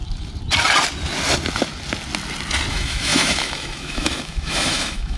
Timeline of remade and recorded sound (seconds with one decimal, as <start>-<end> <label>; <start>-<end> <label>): 0.0-2.7 recorded; 2.7-5.2 remade